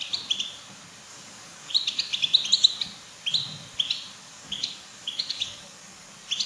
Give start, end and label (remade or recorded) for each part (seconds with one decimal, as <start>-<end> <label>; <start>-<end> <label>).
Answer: 0.0-1.1 recorded; 1.1-1.7 remade; 1.7-4.2 recorded; 4.2-6.1 remade; 6.1-6.5 recorded